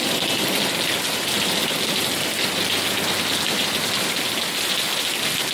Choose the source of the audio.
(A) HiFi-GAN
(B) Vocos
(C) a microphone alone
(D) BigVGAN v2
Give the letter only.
C